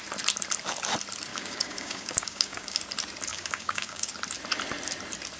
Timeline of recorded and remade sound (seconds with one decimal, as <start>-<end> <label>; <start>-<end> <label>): 0.0-1.3 recorded; 1.3-2.8 remade; 2.8-3.3 recorded; 3.3-4.1 remade; 4.1-5.4 recorded